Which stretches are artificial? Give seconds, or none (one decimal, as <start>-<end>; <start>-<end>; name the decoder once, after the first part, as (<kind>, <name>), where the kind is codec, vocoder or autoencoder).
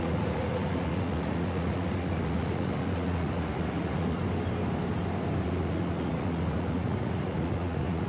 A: 0.0-4.2 (vocoder, Vocos); 5.4-8.1